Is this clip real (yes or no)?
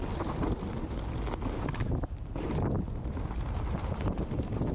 yes